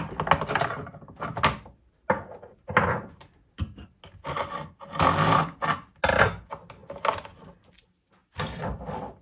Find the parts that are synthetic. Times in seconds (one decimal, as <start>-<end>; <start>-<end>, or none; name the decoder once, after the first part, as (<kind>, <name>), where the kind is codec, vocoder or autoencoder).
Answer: none